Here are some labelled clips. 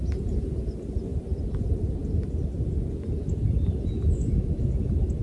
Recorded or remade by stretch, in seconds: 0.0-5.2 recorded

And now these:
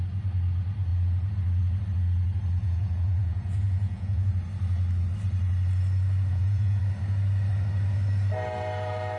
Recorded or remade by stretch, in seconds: 0.0-2.6 recorded; 2.6-4.3 remade; 4.3-6.3 recorded; 6.3-6.8 remade; 6.8-9.2 recorded

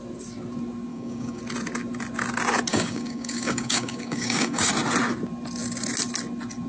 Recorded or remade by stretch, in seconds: 0.0-0.9 recorded; 0.9-1.4 remade; 1.4-2.7 recorded; 2.7-4.7 remade; 4.7-6.7 recorded

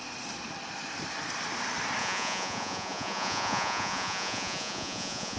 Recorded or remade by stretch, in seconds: 0.0-2.0 recorded; 2.0-5.4 remade